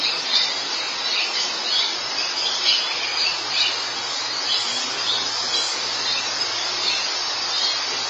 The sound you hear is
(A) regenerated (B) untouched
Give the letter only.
B